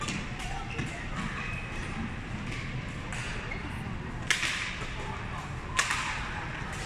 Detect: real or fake real